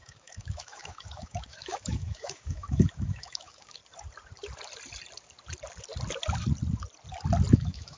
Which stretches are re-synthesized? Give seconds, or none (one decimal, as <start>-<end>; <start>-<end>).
0.0-3.8; 7.5-8.0